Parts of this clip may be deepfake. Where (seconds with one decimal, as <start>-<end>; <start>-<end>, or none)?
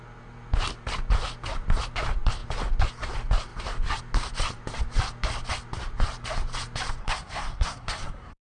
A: 7.0-8.6